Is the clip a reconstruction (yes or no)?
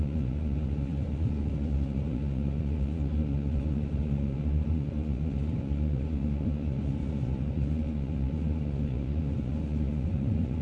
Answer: yes